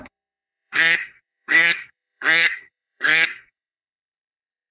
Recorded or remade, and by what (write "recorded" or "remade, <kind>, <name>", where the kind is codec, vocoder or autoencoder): remade, codec, SNAC